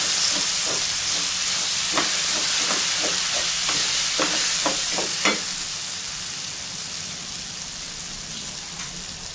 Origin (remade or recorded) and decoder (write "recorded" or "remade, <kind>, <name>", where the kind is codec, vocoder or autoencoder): recorded